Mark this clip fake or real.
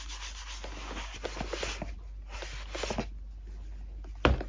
real